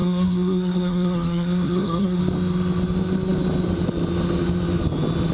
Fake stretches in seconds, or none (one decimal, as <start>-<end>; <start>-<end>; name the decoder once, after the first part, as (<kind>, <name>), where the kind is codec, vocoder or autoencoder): 0.0-2.2 (codec, SNAC)